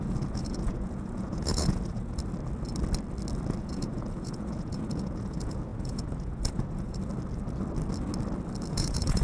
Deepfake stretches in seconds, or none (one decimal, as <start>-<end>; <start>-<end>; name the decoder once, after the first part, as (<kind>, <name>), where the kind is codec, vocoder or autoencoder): 0.0-2.2 (vocoder, Vocos); 3.6-7.1; 8.7-9.2